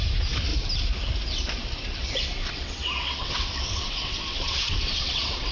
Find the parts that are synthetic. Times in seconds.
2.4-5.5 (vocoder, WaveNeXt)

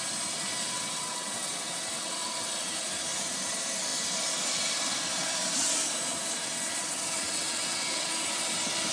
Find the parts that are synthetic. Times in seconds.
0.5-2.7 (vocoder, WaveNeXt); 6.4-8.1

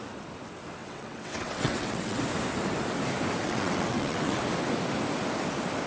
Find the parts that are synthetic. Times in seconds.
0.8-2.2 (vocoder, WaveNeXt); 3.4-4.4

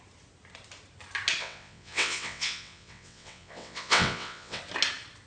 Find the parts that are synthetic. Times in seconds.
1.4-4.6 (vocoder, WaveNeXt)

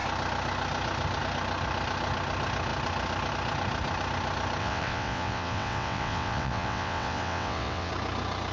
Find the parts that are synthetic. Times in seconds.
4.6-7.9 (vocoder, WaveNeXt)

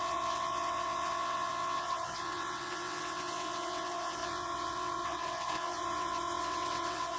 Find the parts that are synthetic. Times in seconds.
0.0-7.2 (vocoder, WaveNeXt)